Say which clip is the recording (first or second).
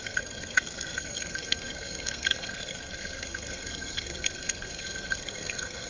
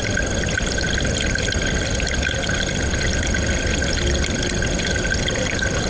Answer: second